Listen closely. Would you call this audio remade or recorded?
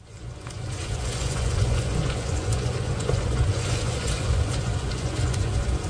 remade